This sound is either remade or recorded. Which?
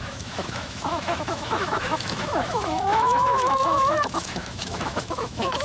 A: remade